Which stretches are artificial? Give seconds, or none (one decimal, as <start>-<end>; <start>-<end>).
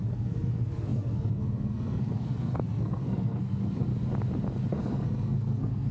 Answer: 0.0-3.9; 4.7-5.9